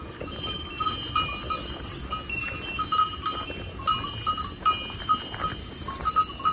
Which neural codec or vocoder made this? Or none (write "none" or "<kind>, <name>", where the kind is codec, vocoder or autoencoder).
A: none